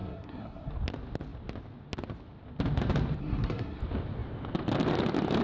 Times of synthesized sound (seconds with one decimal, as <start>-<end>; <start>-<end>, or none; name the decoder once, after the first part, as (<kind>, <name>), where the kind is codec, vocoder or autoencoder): 0.0-0.7 (codec, SNAC); 3.2-3.8